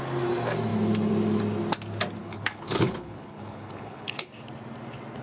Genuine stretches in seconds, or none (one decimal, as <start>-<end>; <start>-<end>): 0.0-2.2; 4.3-5.2